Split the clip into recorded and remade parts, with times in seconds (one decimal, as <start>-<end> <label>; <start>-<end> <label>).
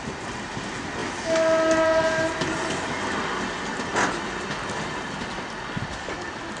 0.0-6.6 recorded